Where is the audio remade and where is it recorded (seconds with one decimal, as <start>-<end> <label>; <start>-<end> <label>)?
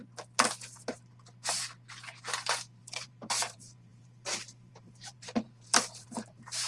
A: 0.0-2.8 recorded; 2.8-6.7 remade